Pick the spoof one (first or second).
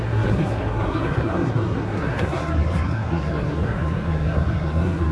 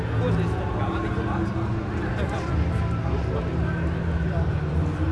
first